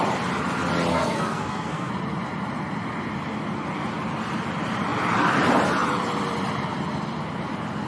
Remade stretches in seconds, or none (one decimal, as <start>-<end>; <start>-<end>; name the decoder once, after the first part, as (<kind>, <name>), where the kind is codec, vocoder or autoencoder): 0.9-1.9 (codec, SNAC)